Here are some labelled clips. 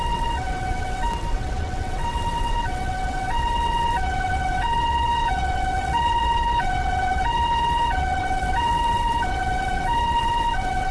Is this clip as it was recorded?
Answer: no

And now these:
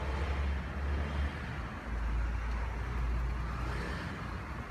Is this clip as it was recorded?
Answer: yes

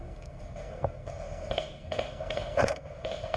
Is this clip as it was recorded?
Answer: no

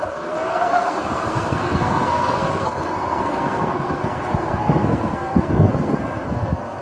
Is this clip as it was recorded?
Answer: no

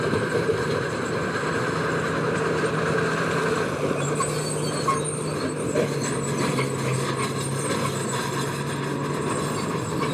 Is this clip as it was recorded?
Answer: yes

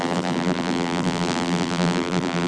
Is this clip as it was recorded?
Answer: no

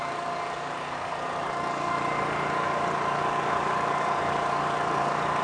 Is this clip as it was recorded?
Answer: no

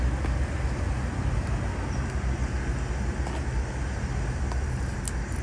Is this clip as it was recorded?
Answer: yes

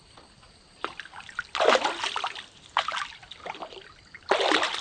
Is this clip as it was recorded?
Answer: yes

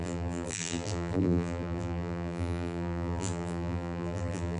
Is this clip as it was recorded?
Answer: no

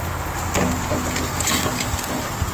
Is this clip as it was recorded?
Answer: yes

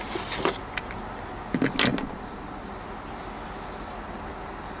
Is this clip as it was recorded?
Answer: yes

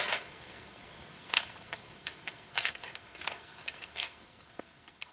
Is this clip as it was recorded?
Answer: no